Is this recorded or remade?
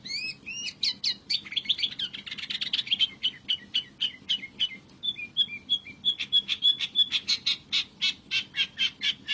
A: recorded